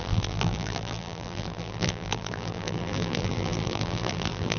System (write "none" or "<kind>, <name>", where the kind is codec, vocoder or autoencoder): vocoder, BigVGAN v2